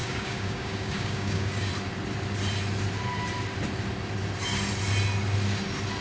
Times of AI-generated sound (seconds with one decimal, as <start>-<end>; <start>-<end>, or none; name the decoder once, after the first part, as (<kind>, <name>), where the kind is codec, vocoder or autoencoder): 0.0-1.7 (codec, DAC)